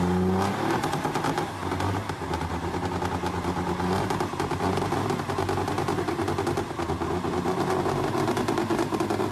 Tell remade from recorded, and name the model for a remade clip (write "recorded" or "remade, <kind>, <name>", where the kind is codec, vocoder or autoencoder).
recorded